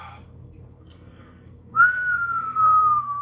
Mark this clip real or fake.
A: fake